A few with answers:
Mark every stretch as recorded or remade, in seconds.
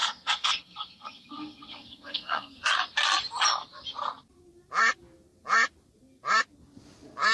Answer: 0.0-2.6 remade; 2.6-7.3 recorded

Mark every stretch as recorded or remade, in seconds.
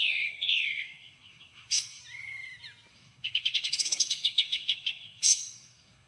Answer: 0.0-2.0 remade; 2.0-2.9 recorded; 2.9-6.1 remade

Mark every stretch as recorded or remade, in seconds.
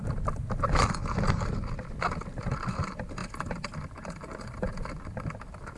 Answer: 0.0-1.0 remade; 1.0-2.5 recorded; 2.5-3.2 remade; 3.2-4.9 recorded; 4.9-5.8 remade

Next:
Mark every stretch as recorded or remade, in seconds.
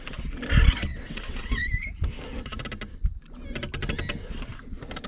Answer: 0.0-0.9 recorded; 0.9-1.6 remade; 1.6-5.1 recorded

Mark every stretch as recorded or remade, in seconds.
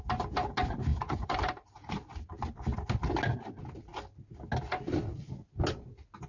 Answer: 0.0-0.9 recorded; 0.9-1.9 remade; 1.9-6.3 recorded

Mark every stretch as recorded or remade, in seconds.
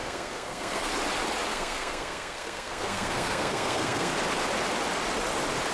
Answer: 0.0-0.9 remade; 0.9-1.5 recorded; 1.5-4.1 remade; 4.1-5.7 recorded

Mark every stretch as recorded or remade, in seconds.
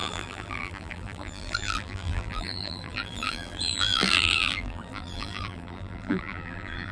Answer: 0.0-6.9 remade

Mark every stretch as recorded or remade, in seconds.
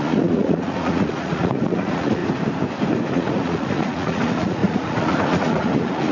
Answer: 0.0-2.2 remade; 2.2-3.1 recorded; 3.1-6.1 remade